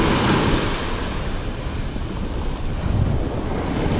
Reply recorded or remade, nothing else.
recorded